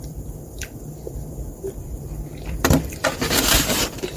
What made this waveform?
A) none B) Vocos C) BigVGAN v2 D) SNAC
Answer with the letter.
C